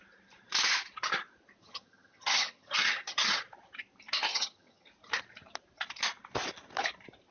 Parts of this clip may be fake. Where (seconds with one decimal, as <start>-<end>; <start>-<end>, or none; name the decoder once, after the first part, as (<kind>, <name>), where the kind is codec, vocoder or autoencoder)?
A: 1.6-3.4 (vocoder, HiFi-GAN); 4.3-4.9